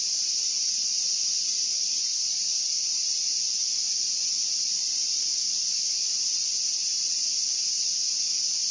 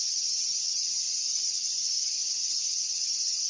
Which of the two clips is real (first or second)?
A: first